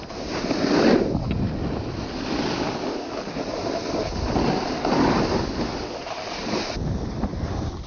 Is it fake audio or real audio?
real